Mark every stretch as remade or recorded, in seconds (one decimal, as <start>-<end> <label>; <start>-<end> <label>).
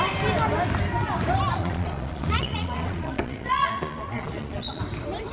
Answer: 0.0-1.6 recorded; 1.6-4.8 remade; 4.8-5.3 recorded